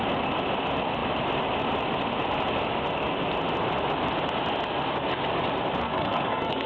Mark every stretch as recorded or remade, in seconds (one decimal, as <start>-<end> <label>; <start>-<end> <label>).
0.0-5.8 recorded; 5.8-6.7 remade